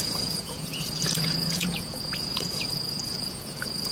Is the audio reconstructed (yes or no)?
yes